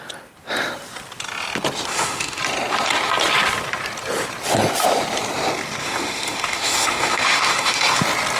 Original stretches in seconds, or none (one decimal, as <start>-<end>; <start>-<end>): 0.0-1.9; 2.4-5.8; 8.0-8.4

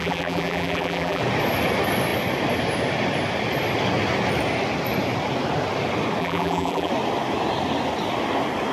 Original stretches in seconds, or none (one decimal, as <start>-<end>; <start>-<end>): 1.2-6.2; 6.9-8.7

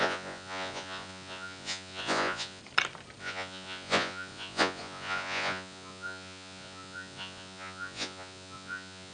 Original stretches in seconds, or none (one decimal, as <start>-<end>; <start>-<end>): 2.6-3.2

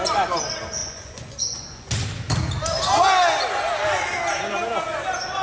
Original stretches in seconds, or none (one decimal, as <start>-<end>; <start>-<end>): 0.0-0.8; 1.9-5.4

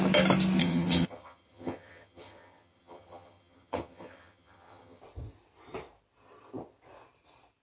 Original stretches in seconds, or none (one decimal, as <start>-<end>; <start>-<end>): 0.0-0.6; 5.0-7.6

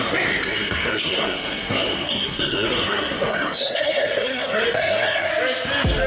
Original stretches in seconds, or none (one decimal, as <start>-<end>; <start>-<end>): 5.3-6.1

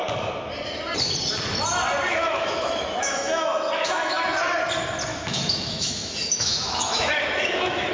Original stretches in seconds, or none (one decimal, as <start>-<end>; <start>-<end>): 0.0-2.1; 4.4-5.1

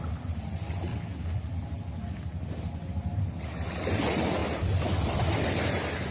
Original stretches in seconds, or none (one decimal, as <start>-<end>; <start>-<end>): 0.0-6.1